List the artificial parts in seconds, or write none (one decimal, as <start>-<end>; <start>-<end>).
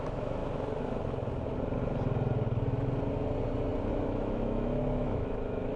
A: 0.0-0.4; 3.9-5.8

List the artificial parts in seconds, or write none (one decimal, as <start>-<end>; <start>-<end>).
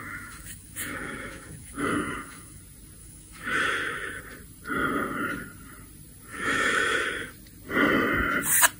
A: 0.0-2.6; 3.0-4.2; 6.3-7.3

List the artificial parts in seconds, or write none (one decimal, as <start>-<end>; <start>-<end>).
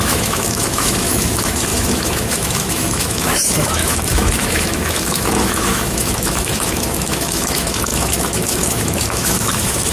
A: 0.0-9.9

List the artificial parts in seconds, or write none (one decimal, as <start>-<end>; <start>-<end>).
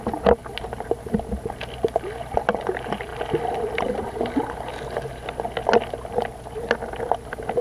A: none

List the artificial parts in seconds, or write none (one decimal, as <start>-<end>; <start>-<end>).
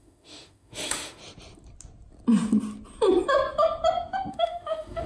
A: 0.0-1.2; 4.3-5.1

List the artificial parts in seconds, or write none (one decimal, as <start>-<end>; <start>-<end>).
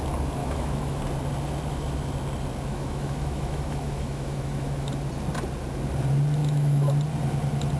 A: 0.4-1.0; 2.7-4.9; 6.4-6.9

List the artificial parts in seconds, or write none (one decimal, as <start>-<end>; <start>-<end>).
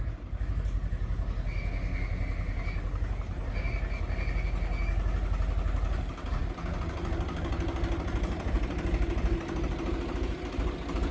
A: none